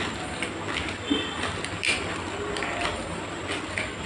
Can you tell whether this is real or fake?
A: real